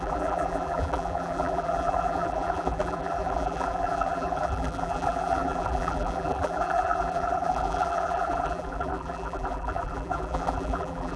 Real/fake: fake